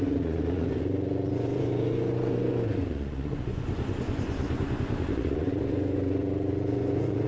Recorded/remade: remade